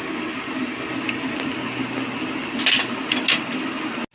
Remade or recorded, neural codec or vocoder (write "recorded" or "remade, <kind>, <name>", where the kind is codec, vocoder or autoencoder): recorded